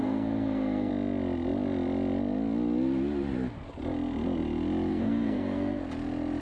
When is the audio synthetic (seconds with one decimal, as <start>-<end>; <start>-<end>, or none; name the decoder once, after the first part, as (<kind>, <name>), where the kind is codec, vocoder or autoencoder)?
0.0-0.9 (codec, SNAC); 4.9-5.8